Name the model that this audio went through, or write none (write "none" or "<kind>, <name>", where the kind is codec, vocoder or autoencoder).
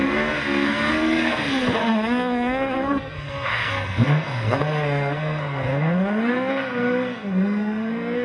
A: codec, SNAC